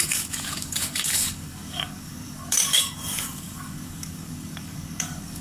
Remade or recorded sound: remade